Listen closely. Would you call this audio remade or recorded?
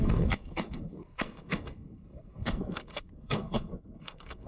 remade